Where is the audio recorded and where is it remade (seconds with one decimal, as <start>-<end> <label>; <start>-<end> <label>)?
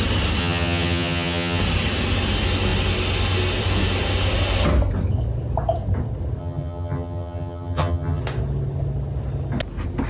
0.0-0.4 recorded; 0.4-1.6 remade; 1.6-6.4 recorded; 6.4-8.2 remade; 8.2-10.1 recorded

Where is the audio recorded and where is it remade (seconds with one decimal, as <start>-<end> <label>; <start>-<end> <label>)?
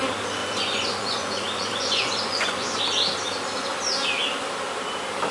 0.0-0.4 recorded; 0.4-2.8 remade; 2.8-5.3 recorded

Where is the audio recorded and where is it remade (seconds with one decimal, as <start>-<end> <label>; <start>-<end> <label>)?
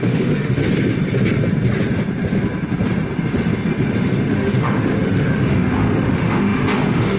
0.0-0.6 remade; 0.6-4.3 recorded; 4.3-7.2 remade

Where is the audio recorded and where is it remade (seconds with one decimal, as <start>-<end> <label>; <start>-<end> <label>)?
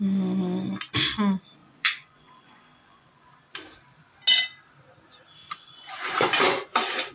0.0-1.6 recorded; 1.6-3.3 remade; 3.3-5.4 recorded; 5.4-6.6 remade; 6.6-7.1 recorded